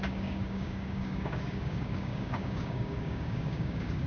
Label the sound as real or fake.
fake